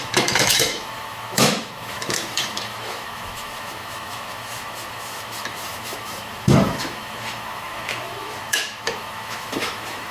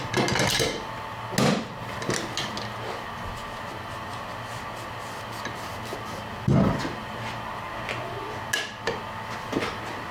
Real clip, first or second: second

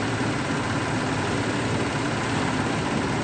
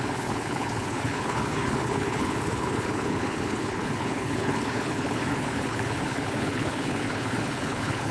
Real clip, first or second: first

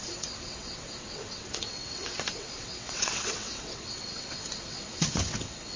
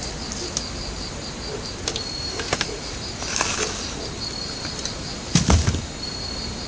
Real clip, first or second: second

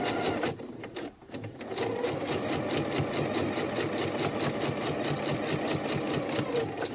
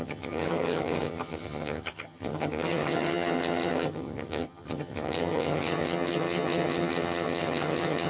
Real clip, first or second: first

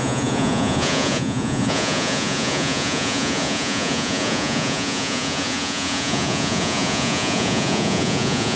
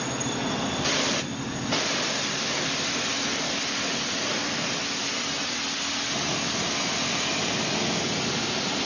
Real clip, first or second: second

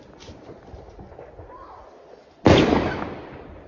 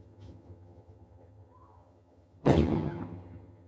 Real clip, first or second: first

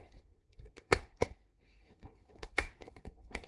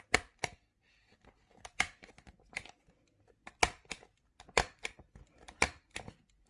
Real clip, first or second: second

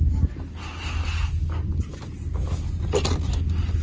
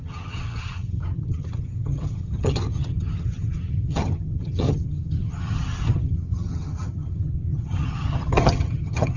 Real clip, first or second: first